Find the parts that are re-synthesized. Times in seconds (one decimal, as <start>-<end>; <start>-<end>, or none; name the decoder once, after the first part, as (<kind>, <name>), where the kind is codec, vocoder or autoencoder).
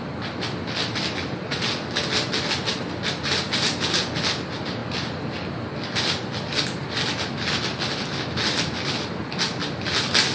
none